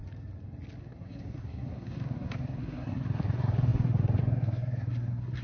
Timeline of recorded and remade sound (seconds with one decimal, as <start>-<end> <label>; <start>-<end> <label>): 0.0-0.8 recorded; 0.8-5.4 remade